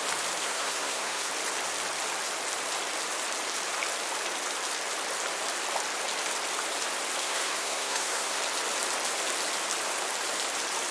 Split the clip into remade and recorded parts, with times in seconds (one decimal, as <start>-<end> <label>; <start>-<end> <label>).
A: 0.0-0.4 recorded; 0.4-1.3 remade; 1.3-7.2 recorded; 7.2-8.4 remade; 8.4-10.9 recorded